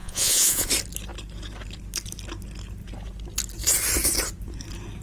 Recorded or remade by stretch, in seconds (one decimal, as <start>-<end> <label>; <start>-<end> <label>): 0.0-0.7 remade; 0.7-5.0 recorded